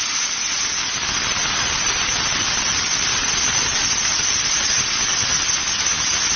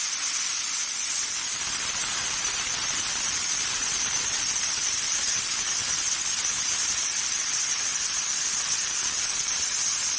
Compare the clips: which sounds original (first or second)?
first